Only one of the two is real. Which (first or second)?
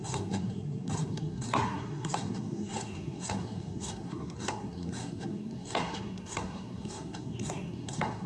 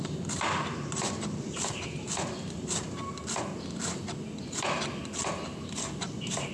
second